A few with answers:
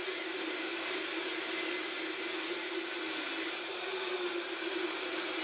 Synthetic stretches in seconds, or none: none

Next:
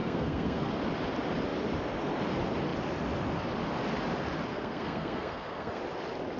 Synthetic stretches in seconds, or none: 0.0-0.7 (codec, SNAC); 4.5-5.8